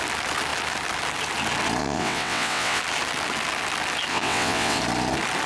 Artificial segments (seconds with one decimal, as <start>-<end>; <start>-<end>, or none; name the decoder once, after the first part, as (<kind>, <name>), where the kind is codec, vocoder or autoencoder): 1.8-2.8 (vocoder, WaveNeXt); 4.1-4.8